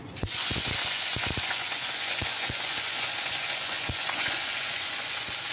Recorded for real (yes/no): no